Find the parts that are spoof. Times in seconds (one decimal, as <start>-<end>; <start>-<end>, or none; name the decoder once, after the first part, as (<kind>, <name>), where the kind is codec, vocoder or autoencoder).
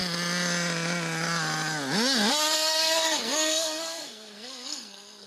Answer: 2.3-5.3 (codec, SNAC)